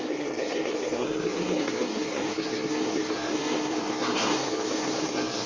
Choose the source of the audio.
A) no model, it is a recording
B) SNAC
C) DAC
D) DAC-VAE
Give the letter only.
B